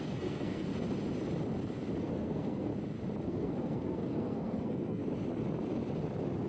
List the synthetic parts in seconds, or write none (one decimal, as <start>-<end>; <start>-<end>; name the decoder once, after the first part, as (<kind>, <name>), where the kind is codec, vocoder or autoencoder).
0.0-0.7 (codec, SNAC); 2.0-2.7; 3.2-5.0